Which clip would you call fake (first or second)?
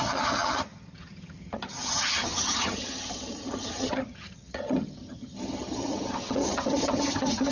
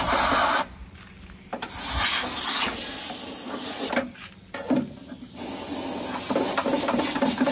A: first